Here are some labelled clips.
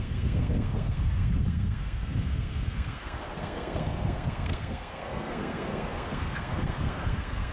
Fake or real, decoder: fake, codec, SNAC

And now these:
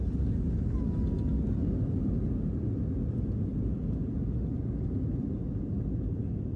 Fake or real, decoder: real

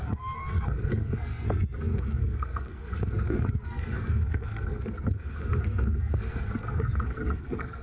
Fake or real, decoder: fake, codec, SNAC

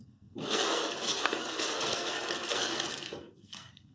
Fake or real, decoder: fake, codec, SNAC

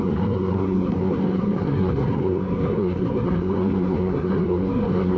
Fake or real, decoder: fake, codec, SNAC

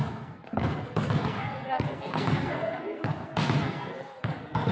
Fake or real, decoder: fake, codec, SNAC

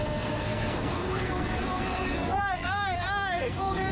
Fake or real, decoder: fake, codec, SNAC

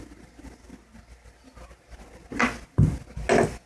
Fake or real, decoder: real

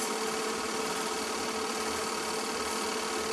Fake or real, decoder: real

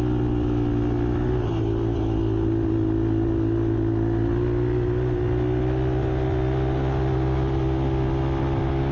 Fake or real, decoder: real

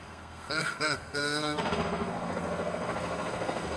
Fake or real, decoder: fake, codec, SNAC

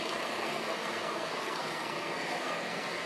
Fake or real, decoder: fake, codec, SNAC